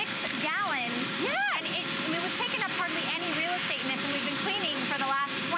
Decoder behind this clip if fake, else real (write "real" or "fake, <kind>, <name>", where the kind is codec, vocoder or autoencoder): fake, vocoder, BigVGAN v2